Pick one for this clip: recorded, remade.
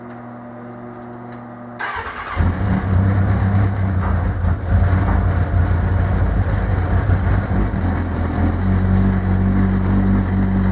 recorded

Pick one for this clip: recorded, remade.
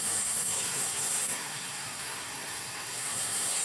remade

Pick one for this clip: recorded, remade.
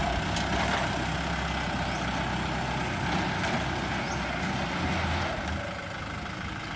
recorded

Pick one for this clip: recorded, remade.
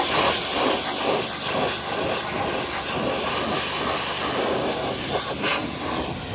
recorded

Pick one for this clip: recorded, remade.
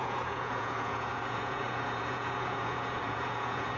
remade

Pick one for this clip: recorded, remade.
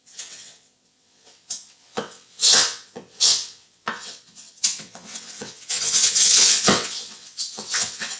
remade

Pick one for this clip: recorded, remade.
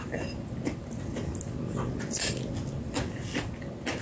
recorded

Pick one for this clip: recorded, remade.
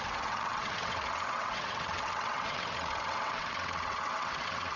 remade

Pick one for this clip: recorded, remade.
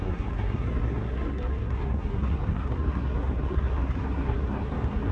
remade